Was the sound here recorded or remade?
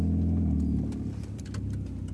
recorded